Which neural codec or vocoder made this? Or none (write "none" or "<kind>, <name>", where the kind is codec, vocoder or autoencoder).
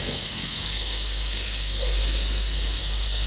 codec, SNAC